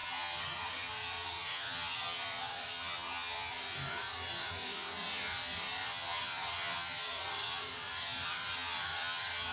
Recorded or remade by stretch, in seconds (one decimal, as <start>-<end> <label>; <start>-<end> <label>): 0.0-9.5 remade